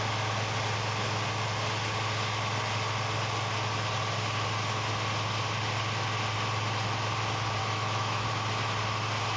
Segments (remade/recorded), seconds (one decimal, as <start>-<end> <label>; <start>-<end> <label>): 0.0-7.6 recorded; 7.6-8.3 remade; 8.3-9.4 recorded